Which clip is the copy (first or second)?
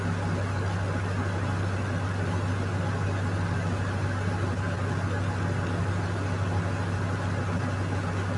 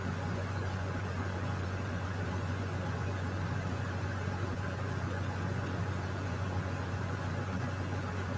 second